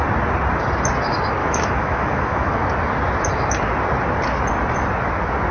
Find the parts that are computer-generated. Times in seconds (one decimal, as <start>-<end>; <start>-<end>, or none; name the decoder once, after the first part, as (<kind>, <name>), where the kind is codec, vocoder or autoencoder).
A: 1.4-2.6 (autoencoder, DAC-VAE)